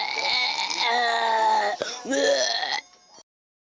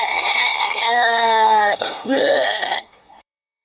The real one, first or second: first